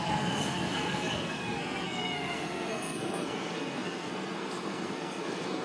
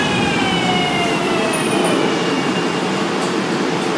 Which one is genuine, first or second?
second